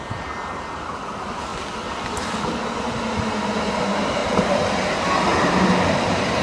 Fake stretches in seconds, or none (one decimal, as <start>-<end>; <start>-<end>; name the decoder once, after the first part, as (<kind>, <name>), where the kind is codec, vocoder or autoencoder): 0.0-1.5 (vocoder, BigVGAN v2); 2.8-4.2; 4.7-5.3